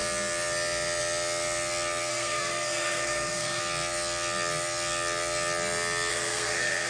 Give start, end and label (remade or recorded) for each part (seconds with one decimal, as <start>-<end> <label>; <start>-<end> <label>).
0.0-2.1 recorded; 2.1-3.6 remade; 3.6-6.1 recorded; 6.1-6.9 remade